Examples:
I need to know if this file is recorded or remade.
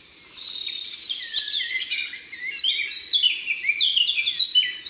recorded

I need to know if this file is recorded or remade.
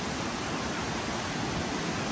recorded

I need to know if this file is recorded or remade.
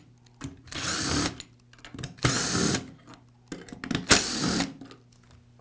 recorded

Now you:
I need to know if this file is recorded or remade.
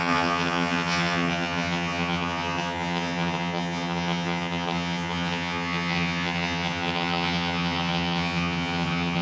remade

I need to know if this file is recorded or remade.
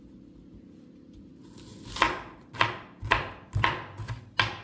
recorded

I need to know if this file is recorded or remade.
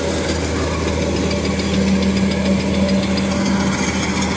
recorded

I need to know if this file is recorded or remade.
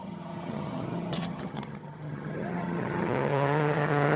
remade